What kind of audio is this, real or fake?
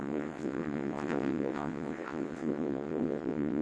fake